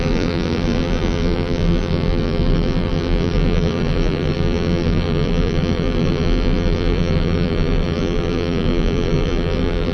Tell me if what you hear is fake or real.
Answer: fake